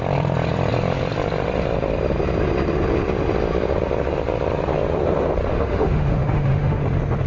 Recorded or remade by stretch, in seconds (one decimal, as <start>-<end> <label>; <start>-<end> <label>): 0.0-5.5 recorded; 5.5-6.8 remade; 6.8-7.3 recorded